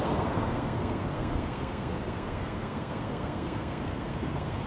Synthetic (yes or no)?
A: yes